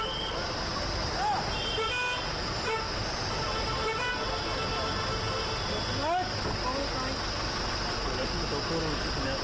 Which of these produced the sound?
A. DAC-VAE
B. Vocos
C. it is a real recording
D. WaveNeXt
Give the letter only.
C